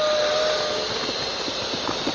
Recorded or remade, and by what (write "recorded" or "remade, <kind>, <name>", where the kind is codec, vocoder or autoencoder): recorded